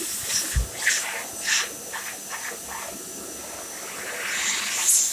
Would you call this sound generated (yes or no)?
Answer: no